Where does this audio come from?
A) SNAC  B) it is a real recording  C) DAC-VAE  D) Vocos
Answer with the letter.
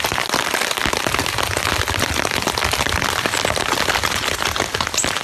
B